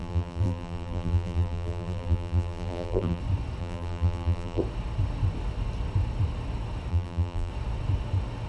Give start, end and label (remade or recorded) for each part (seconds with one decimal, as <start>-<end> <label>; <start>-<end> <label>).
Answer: 0.0-3.2 remade; 3.2-3.6 recorded; 3.6-4.6 remade; 4.6-6.9 recorded; 6.9-7.5 remade; 7.5-8.5 recorded